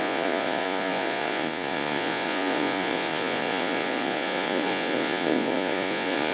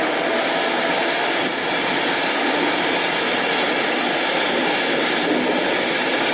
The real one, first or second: second